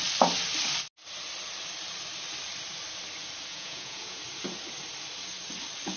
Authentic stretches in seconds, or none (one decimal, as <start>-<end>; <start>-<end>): 0.0-3.5; 4.2-6.0